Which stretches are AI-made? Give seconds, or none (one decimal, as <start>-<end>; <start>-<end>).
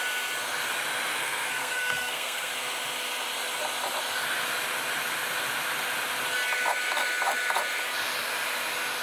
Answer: 1.2-2.5